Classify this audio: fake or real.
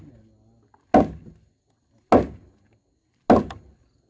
real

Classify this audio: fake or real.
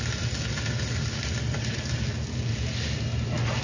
real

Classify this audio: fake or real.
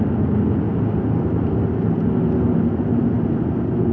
real